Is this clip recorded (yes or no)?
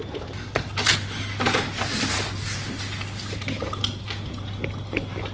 yes